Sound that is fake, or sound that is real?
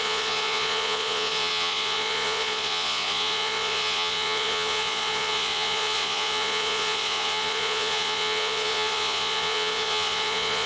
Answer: fake